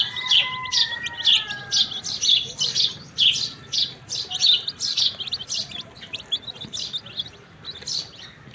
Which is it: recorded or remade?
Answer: recorded